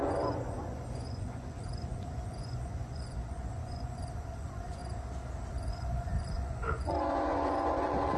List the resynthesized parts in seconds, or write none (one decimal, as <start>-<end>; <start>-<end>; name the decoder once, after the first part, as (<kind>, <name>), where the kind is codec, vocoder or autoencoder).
0.0-4.8 (vocoder, Vocos); 5.5-8.2